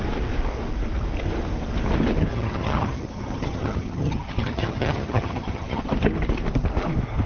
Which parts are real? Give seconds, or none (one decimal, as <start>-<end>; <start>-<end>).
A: 0.0-2.3; 5.8-7.3